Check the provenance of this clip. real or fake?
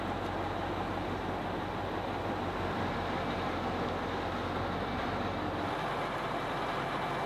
real